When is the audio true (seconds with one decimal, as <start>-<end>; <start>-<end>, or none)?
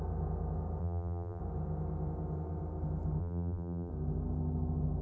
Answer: 0.0-0.8; 1.4-3.2; 3.9-5.0